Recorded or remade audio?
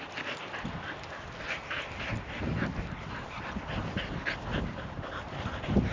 recorded